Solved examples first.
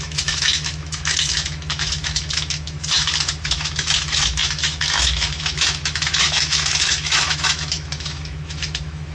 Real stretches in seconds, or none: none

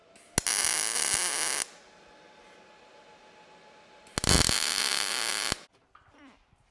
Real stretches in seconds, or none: 0.0-6.7

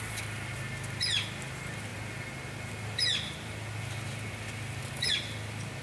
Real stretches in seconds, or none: 0.0-5.8

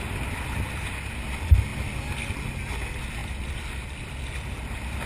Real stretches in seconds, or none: 0.0-5.1

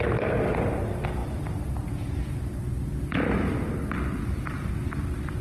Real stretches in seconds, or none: 0.0-5.4